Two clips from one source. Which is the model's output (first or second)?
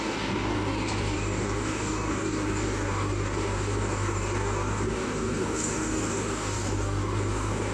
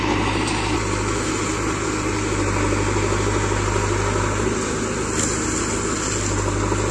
first